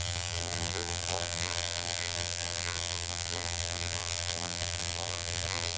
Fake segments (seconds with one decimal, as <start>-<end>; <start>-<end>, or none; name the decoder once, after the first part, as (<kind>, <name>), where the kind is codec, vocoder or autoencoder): 0.0-5.8 (vocoder, BigVGAN v2)